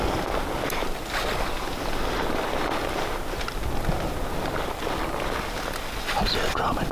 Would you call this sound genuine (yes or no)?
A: yes